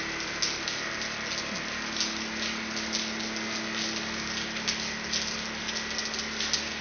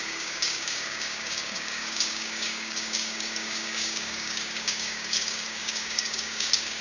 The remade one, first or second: second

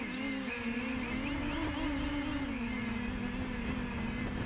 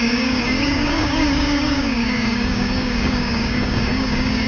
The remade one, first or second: second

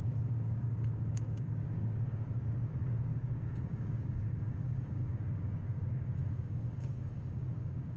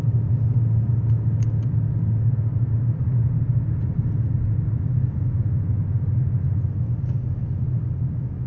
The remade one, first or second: first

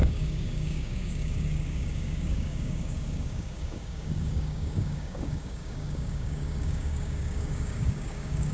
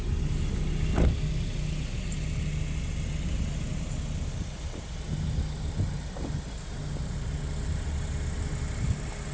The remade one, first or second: first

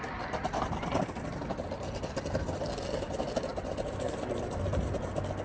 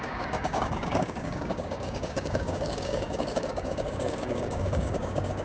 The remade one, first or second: second